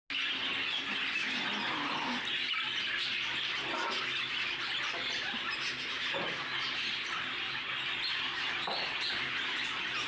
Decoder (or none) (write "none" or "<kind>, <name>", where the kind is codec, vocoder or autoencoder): none